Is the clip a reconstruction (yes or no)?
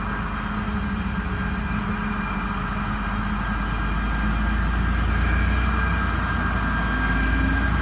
no